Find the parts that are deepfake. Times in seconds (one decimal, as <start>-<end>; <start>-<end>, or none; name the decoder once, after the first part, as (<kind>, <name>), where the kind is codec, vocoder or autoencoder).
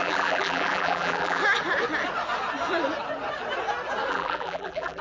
0.0-1.4 (vocoder, BigVGAN v2); 4.1-5.0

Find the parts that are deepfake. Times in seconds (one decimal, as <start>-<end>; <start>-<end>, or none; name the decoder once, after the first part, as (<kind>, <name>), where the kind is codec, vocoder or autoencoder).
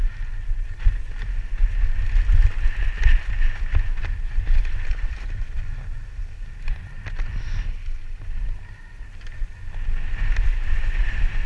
6.2-7.1 (vocoder, BigVGAN v2)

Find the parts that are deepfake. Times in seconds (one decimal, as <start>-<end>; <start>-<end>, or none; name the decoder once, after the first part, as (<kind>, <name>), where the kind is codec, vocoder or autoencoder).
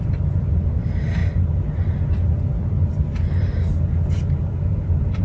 0.0-1.2 (vocoder, BigVGAN v2); 2.0-2.5; 4.8-5.2